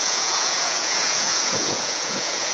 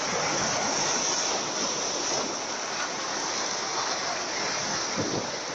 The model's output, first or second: first